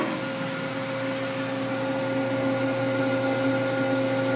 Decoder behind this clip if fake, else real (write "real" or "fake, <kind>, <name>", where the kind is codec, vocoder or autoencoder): real